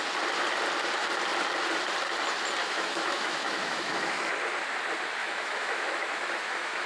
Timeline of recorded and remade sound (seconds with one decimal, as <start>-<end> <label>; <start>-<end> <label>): 0.0-2.6 recorded; 2.6-4.3 remade; 4.3-5.2 recorded; 5.2-6.9 remade